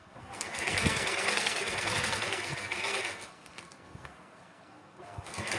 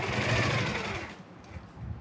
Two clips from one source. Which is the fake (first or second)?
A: first